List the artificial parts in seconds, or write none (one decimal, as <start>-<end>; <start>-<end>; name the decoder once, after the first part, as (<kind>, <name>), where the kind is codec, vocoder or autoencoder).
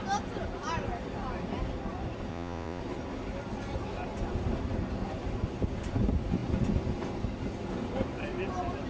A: 2.3-2.8 (vocoder, Vocos)